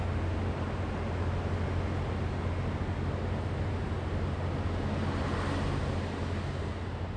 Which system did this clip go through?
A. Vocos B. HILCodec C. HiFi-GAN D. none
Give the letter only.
D